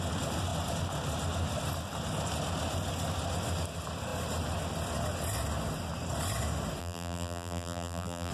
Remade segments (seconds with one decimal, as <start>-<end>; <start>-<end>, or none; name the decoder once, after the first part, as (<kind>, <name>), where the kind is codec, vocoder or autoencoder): 6.8-8.3 (vocoder, BigVGAN v2)